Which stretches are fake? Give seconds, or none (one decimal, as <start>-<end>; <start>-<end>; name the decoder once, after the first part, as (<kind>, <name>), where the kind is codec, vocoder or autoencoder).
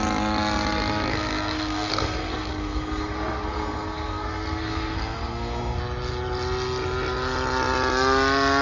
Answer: 1.1-5.8 (codec, SNAC)